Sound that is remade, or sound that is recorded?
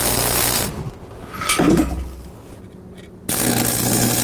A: recorded